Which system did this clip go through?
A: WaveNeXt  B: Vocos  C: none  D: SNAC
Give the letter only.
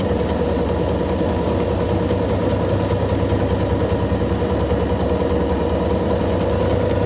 C